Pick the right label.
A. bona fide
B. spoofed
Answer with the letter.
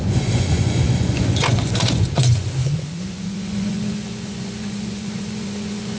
B